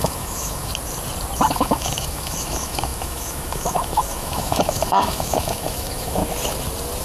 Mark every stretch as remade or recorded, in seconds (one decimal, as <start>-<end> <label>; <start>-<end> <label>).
0.0-0.7 remade; 0.7-1.5 recorded; 1.5-6.2 remade; 6.2-7.0 recorded